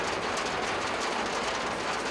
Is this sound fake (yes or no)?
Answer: no